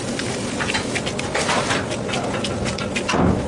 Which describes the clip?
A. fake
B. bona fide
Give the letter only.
B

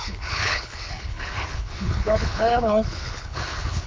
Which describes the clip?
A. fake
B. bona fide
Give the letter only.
A